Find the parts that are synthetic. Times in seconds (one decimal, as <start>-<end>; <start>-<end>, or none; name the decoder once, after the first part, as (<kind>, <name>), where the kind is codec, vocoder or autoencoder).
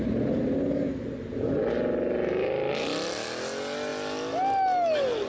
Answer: none